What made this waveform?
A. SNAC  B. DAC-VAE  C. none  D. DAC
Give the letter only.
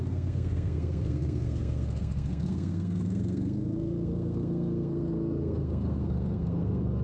A